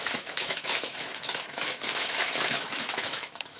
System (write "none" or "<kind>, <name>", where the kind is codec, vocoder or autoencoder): autoencoder, DAC-VAE